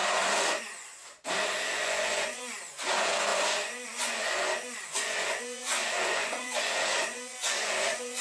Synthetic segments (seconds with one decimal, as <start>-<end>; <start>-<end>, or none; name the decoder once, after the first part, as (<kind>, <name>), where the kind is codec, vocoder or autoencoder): 0.0-1.0 (vocoder, Vocos); 1.7-8.2

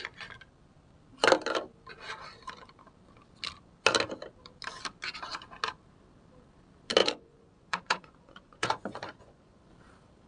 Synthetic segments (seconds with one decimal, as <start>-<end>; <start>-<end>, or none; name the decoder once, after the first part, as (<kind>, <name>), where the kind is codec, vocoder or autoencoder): 7.0-9.7 (vocoder, Vocos)